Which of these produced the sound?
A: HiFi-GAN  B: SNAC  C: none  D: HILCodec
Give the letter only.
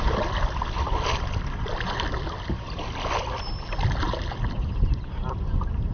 C